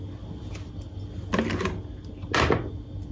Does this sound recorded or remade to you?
recorded